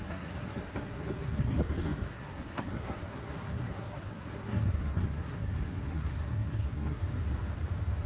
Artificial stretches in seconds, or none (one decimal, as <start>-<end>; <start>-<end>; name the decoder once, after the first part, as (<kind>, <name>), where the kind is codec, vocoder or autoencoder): 0.0-7.0 (codec, SNAC)